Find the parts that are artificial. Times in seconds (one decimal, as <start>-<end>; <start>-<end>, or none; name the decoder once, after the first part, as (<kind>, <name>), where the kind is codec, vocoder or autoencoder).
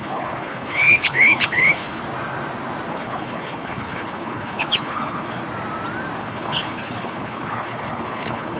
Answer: 0.0-2.0 (codec, HILCodec); 2.9-5.4; 6.2-8.6